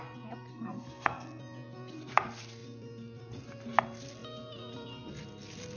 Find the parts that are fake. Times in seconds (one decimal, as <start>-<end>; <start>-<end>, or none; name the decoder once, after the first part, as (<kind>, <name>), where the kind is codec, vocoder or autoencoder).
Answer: 0.5-1.4 (codec, SNAC)